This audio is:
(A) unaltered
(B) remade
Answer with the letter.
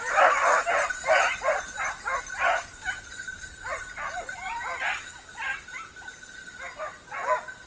A